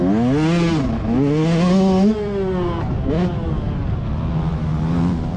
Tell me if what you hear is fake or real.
real